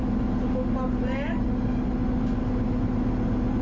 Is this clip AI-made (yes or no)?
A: no